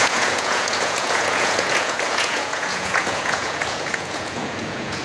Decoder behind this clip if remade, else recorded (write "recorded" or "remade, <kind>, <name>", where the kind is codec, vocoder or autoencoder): remade, vocoder, Vocos